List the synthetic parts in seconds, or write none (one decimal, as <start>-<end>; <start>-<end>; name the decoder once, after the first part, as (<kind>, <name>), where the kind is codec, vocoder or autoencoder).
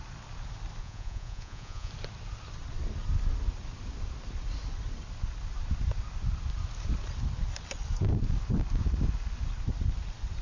0.8-1.9 (vocoder, Vocos)